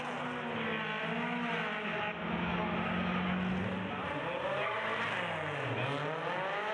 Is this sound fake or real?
real